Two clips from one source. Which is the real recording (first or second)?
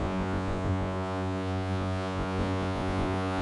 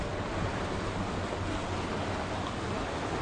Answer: second